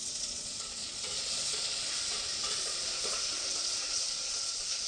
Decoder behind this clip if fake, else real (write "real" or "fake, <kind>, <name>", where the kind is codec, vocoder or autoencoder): fake, vocoder, Vocos